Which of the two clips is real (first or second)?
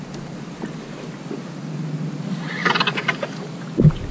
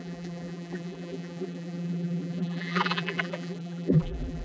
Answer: first